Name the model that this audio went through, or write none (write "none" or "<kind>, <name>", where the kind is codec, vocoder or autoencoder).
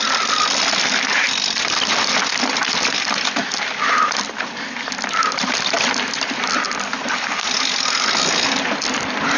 vocoder, BigVGAN v2